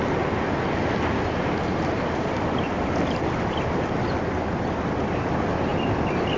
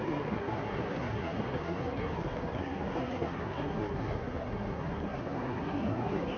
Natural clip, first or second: first